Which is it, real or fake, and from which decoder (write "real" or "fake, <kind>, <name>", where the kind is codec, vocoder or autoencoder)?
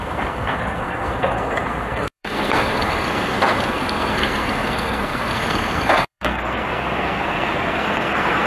fake, codec, SNAC